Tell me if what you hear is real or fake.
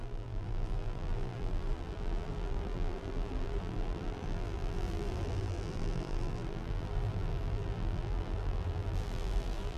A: fake